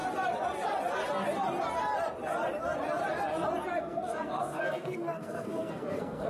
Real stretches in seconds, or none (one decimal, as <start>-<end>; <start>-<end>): 0.0-3.8